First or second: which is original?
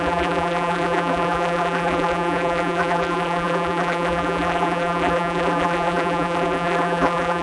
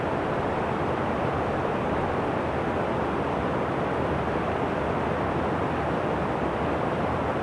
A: second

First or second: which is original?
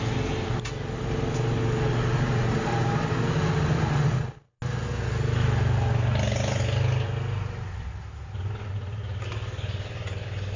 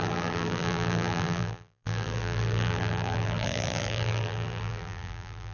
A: first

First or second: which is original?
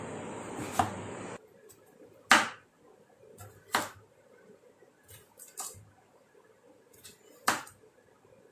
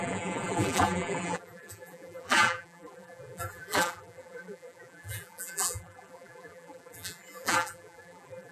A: first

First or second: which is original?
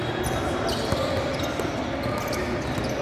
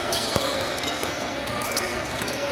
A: first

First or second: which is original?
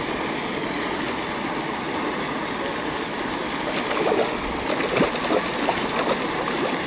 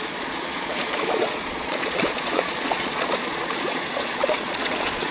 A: first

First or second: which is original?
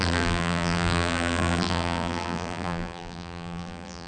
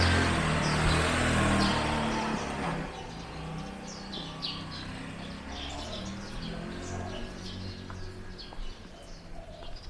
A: second